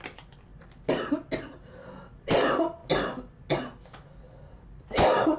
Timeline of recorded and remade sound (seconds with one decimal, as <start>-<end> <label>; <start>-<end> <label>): 0.0-5.4 recorded